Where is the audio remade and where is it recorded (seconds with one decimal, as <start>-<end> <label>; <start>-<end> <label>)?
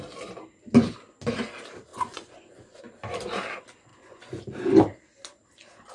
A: 0.0-1.9 recorded; 1.9-2.8 remade; 2.8-3.9 recorded; 3.9-4.4 remade; 4.4-5.9 recorded